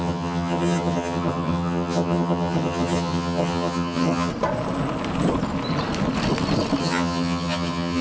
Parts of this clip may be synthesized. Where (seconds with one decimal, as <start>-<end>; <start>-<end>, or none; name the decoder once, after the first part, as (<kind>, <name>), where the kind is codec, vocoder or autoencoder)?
0.0-4.3 (vocoder, HiFi-GAN); 6.8-8.0